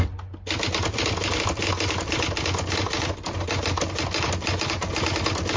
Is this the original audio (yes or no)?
yes